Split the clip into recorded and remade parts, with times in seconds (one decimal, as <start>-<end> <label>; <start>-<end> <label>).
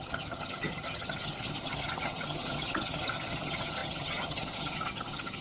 0.0-5.4 remade